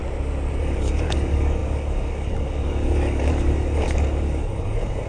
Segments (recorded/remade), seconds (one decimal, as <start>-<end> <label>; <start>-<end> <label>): 0.0-0.6 recorded; 0.6-5.1 remade